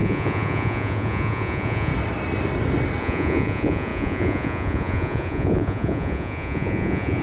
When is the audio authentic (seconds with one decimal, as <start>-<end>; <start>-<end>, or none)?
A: 1.9-3.0